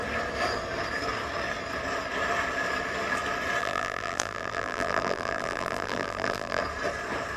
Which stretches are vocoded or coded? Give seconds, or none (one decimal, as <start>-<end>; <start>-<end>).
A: 3.6-6.6